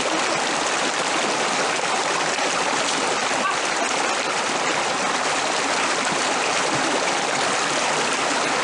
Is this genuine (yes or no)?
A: yes